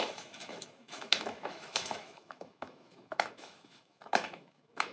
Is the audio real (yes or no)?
no